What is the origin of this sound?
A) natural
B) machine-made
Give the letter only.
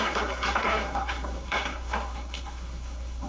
B